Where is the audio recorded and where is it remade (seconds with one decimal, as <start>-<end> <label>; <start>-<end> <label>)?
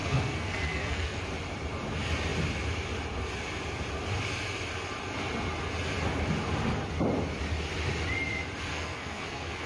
0.0-1.2 remade; 1.2-8.7 recorded; 8.7-9.7 remade